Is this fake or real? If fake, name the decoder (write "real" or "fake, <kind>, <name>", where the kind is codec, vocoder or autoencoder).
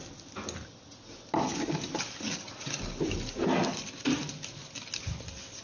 real